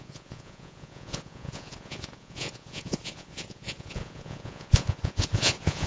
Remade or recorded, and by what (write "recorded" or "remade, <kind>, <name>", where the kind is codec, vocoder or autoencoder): remade, vocoder, Vocos